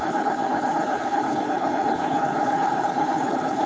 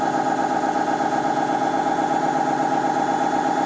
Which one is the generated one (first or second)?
first